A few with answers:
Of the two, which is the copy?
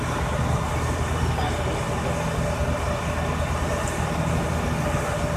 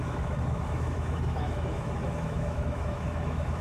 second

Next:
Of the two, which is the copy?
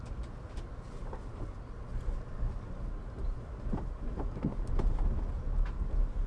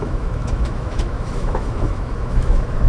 second